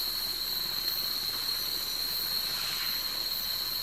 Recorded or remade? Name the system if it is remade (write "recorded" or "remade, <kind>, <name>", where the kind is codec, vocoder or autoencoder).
recorded